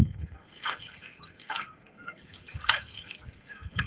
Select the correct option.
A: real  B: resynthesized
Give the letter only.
B